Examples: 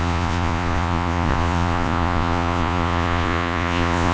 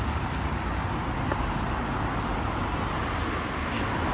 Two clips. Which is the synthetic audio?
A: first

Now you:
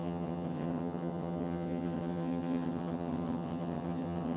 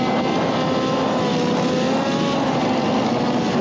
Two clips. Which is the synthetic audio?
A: first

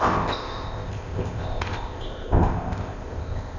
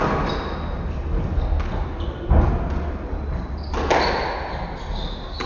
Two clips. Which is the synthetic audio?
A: first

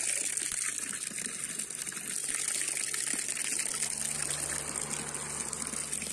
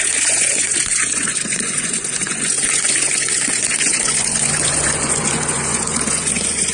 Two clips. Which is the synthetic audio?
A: second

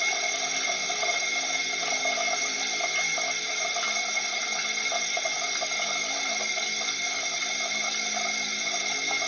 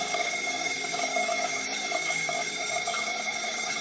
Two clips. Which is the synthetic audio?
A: second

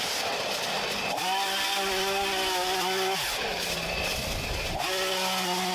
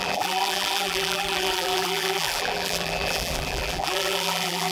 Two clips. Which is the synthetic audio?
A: second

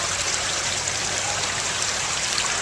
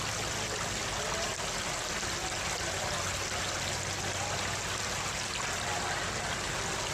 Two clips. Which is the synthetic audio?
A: first